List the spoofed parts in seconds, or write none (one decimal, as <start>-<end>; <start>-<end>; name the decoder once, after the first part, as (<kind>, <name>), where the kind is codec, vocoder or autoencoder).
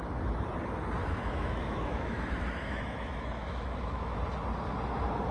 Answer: 1.0-4.2 (autoencoder, DAC-VAE)